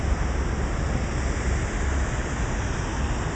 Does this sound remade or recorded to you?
recorded